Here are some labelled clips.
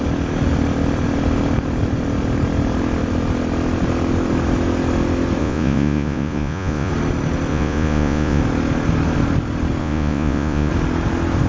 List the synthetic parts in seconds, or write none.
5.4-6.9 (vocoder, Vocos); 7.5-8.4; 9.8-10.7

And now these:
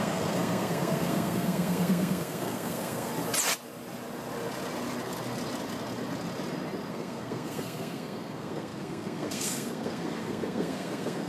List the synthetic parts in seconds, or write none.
0.0-3.1 (codec, SNAC); 6.9-11.3

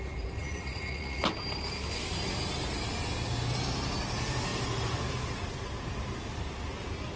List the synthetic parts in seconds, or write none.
0.4-1.2 (vocoder, Vocos)

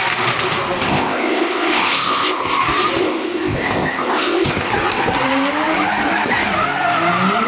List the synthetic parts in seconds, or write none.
0.9-2.6 (codec, ZipCodec); 3.0-4.7

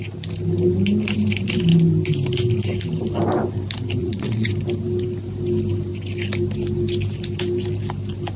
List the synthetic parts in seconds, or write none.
4.0-4.5 (vocoder, Vocos)

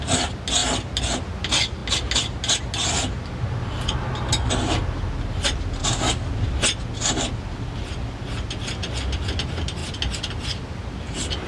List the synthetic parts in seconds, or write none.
5.8-6.3 (codec, DAC)

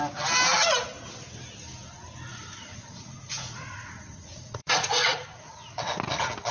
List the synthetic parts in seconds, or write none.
2.3-5.5 (vocoder, Vocos)

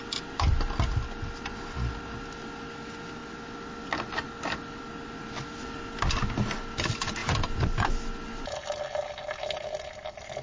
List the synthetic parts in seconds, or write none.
none